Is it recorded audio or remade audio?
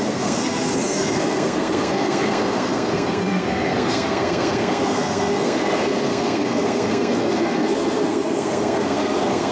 remade